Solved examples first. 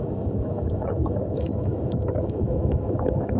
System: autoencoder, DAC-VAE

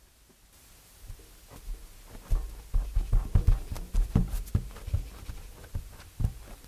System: none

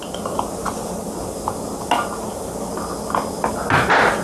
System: none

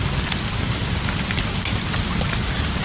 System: none